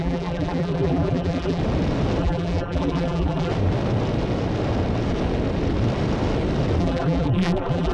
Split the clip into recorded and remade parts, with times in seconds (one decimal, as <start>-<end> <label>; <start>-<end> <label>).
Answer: 0.0-1.6 remade; 1.6-2.2 recorded; 2.2-3.5 remade; 3.5-6.8 recorded; 6.8-7.9 remade